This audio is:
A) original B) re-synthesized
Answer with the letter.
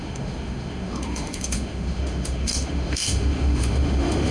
B